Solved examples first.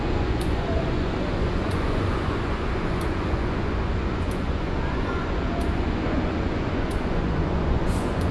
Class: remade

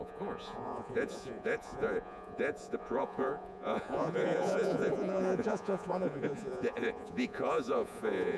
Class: remade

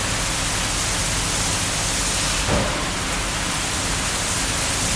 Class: recorded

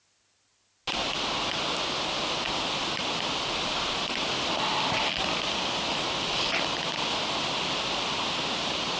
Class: recorded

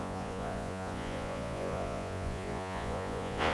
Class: remade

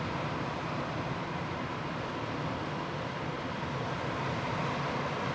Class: recorded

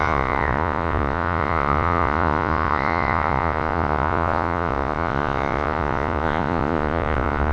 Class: remade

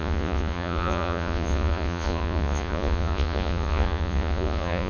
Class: remade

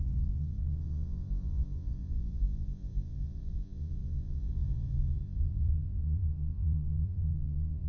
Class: remade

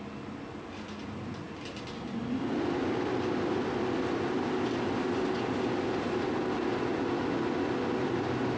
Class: recorded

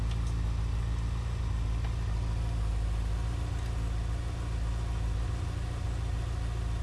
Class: recorded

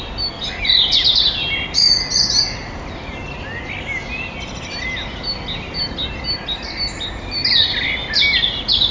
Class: recorded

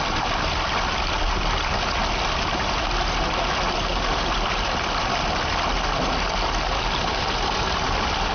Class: recorded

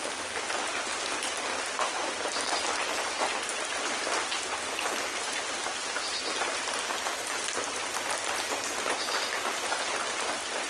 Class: recorded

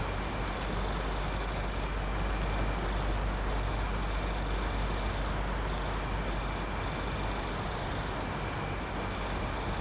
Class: recorded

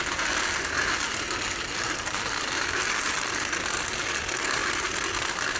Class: recorded